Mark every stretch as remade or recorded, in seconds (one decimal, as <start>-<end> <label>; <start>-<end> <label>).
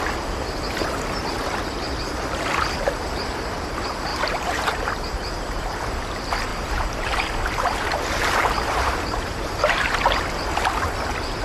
0.0-4.1 recorded; 4.1-5.8 remade; 5.8-6.5 recorded; 6.5-9.5 remade; 9.5-11.4 recorded